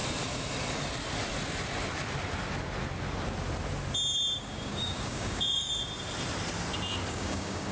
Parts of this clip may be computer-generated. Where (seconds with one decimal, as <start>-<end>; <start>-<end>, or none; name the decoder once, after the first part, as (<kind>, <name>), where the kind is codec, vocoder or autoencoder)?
4.4-5.7 (codec, DAC); 7.1-7.7